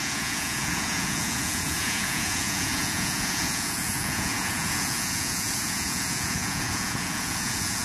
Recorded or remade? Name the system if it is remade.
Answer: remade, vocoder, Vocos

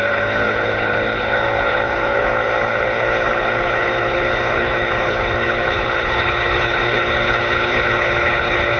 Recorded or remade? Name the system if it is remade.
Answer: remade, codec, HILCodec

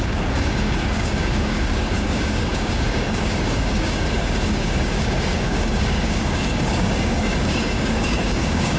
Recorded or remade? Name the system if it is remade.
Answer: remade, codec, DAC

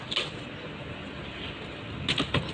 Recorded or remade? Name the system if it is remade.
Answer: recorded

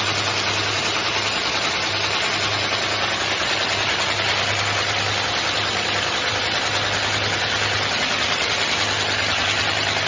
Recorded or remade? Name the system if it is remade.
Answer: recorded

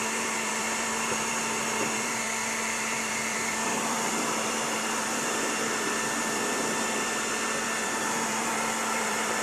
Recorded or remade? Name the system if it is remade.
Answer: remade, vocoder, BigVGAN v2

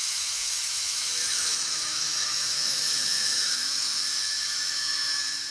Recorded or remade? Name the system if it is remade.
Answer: remade, autoencoder, DAC-VAE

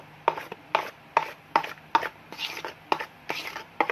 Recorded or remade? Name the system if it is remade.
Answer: recorded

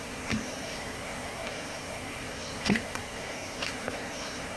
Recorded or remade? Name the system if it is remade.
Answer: remade, codec, SNAC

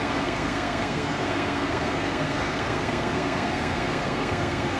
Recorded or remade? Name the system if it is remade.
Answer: remade, codec, SNAC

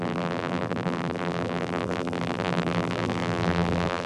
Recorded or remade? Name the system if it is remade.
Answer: remade, vocoder, BigVGAN v2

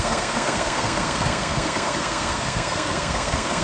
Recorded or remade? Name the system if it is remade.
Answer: remade, codec, SNAC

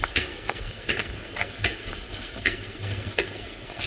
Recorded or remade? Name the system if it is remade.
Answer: remade, codec, SNAC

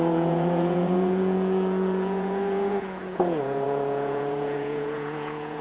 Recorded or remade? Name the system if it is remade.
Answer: remade, vocoder, Vocos